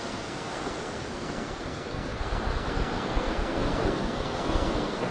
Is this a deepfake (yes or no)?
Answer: yes